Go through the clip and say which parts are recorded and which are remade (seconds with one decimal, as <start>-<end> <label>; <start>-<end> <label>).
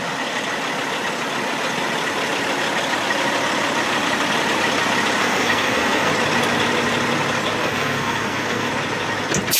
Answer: 0.0-5.2 recorded; 5.2-6.1 remade; 6.1-7.6 recorded; 7.6-8.7 remade; 8.7-9.6 recorded